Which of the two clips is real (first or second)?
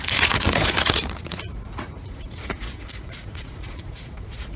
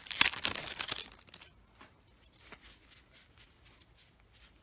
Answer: second